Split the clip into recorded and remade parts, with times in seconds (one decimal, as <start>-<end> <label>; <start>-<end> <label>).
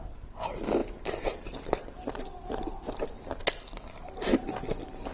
0.0-0.8 remade; 0.8-3.9 recorded; 3.9-5.1 remade